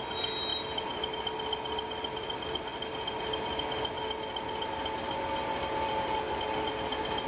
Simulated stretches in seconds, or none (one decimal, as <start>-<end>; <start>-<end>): 0.5-1.1; 5.4-6.7